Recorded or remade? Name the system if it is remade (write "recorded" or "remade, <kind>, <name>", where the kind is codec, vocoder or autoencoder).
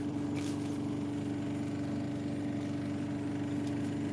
recorded